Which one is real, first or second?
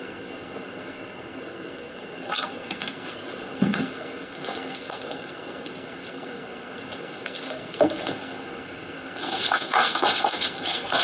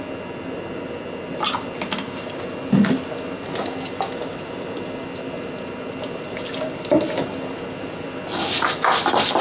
second